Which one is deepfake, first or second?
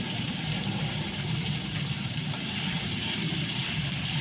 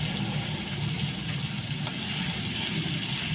first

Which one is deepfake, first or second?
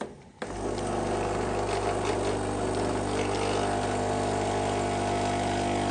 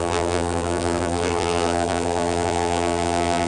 second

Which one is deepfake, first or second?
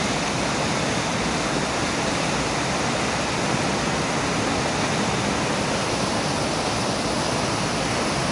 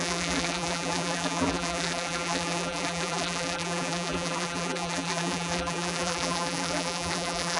second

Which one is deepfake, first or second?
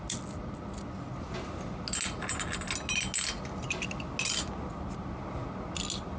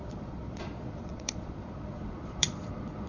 second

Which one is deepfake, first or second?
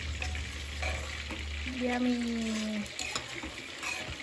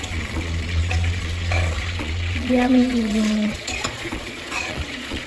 second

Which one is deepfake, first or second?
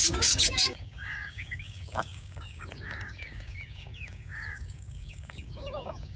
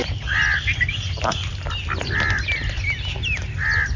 first